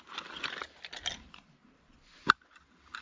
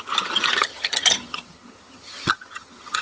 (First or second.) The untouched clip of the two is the first